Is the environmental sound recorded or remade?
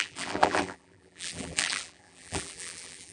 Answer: remade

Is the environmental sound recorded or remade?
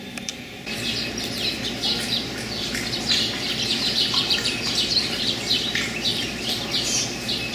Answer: recorded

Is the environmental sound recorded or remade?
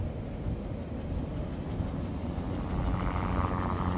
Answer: recorded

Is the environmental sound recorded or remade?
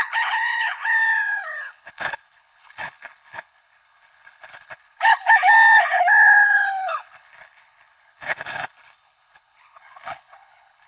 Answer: remade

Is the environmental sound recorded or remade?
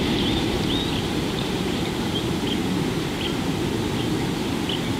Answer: recorded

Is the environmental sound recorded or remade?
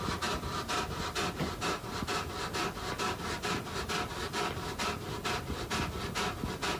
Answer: recorded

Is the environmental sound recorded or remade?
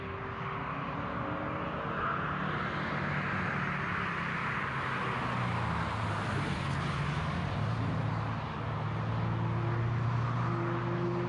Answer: recorded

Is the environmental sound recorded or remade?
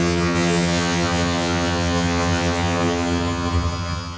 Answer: remade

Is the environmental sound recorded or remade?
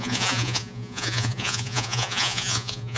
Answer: remade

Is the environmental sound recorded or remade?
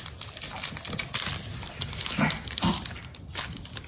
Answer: recorded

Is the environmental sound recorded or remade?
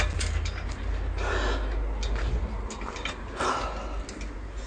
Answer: recorded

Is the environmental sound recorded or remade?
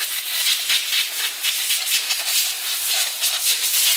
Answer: recorded